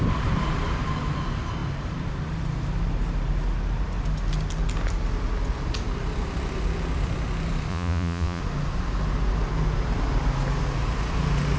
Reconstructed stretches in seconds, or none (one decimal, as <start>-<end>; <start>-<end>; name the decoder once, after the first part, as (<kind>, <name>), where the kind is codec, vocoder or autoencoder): 7.7-8.4 (vocoder, Vocos)